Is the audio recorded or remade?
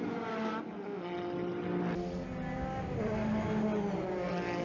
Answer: recorded